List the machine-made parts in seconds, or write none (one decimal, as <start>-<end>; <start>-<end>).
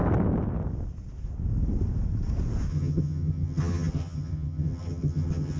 2.7-5.6